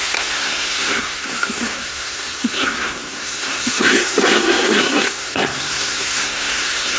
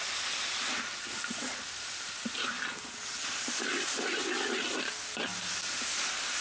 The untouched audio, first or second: second